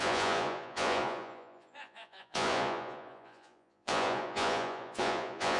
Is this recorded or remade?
remade